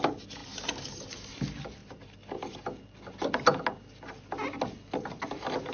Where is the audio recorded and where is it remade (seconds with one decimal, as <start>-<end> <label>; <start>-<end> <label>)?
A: 0.0-5.7 recorded